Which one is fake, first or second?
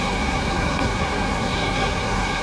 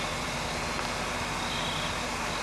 first